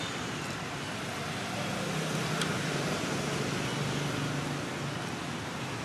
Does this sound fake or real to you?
real